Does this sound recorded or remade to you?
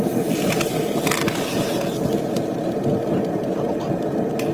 recorded